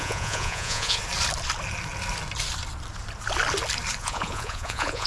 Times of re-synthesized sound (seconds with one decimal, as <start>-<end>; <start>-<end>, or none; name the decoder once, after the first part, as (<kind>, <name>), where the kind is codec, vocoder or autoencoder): 0.0-1.0 (vocoder, Vocos); 4.0-5.1